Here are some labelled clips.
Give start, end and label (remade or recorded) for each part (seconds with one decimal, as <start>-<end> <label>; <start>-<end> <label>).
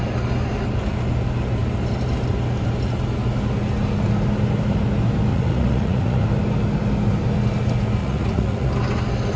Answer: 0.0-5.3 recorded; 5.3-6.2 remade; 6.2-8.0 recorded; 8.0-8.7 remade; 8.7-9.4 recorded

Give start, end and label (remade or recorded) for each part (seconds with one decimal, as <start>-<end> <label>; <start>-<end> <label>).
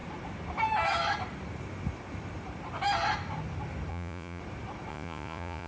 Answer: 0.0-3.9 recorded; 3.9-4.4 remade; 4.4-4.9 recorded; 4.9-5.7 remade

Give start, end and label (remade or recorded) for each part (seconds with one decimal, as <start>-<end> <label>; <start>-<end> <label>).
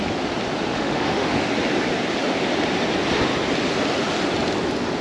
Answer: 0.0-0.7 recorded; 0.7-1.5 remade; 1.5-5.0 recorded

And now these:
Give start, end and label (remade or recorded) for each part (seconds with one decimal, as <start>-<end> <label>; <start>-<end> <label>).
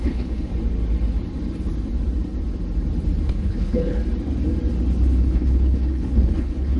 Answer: 0.0-0.5 remade; 0.5-3.3 recorded; 3.3-4.0 remade; 4.0-5.2 recorded; 5.2-6.8 remade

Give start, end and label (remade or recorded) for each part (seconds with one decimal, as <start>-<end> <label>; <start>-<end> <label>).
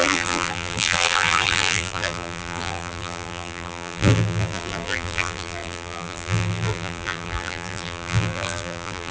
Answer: 0.0-9.1 remade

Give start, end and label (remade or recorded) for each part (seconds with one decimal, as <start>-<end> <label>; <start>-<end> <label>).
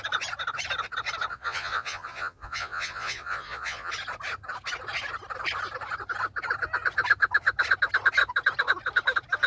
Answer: 0.0-1.3 recorded; 1.3-3.9 remade; 3.9-9.5 recorded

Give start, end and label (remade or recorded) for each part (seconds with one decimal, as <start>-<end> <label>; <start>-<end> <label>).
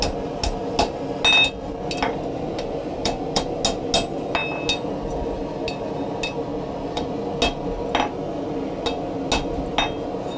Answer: 0.0-2.8 recorded; 2.8-3.4 remade; 3.4-6.5 recorded; 6.5-7.4 remade; 7.4-10.4 recorded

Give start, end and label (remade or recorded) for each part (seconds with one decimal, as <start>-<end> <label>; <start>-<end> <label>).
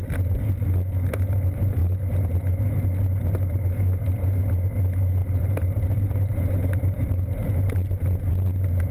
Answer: 0.0-1.8 recorded; 1.8-2.6 remade; 2.6-5.2 recorded; 5.2-7.7 remade; 7.7-8.9 recorded